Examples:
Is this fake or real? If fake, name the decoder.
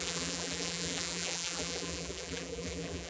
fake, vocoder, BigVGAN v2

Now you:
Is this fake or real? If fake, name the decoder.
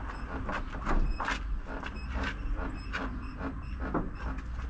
real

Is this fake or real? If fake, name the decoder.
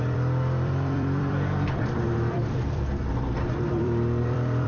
fake, vocoder, BigVGAN v2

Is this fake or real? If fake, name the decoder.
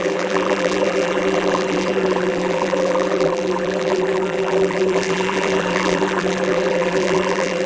fake, vocoder, BigVGAN v2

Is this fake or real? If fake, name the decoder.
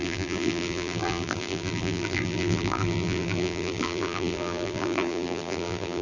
fake, vocoder, BigVGAN v2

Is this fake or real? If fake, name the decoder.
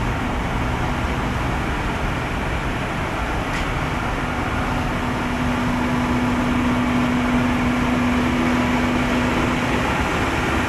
real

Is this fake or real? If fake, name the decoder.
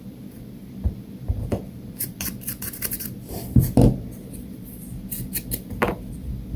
fake, vocoder, BigVGAN v2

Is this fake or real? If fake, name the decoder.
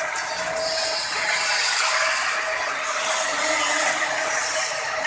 real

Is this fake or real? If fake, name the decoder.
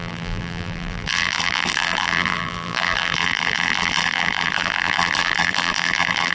fake, vocoder, BigVGAN v2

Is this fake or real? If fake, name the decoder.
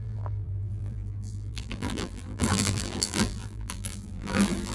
fake, vocoder, BigVGAN v2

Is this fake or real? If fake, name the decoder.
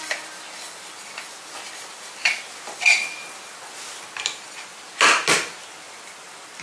real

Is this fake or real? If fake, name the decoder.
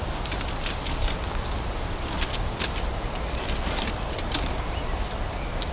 real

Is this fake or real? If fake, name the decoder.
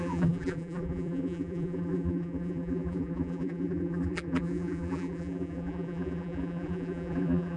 fake, vocoder, BigVGAN v2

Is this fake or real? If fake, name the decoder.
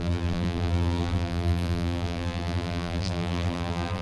fake, vocoder, BigVGAN v2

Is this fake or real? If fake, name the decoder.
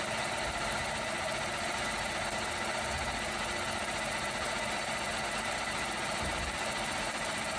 real